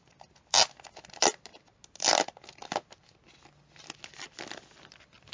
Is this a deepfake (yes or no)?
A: no